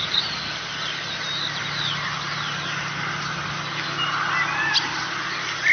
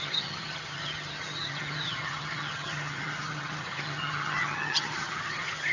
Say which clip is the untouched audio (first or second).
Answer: first